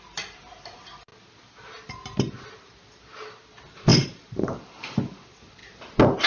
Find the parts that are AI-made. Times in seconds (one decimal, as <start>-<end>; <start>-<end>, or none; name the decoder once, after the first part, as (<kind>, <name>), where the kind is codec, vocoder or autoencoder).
none